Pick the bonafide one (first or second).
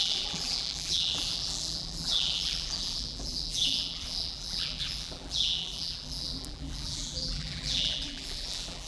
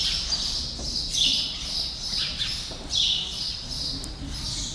second